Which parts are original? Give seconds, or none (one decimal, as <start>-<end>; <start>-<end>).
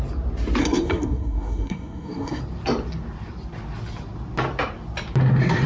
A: 0.0-0.6; 2.4-5.7